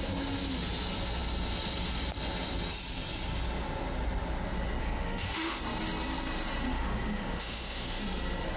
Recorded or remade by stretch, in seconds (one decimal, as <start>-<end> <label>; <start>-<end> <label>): 0.0-4.8 recorded; 4.8-5.6 remade; 5.6-6.7 recorded; 6.7-8.0 remade; 8.0-8.6 recorded